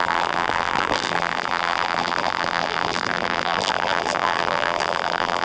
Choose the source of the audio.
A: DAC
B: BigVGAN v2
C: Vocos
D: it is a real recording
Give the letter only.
B